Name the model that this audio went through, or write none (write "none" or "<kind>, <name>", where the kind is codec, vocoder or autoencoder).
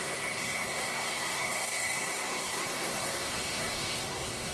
codec, SNAC